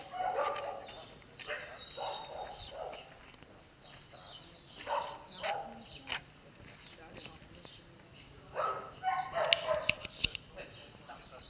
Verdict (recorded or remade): recorded